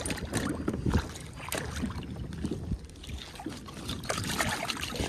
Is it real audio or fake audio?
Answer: real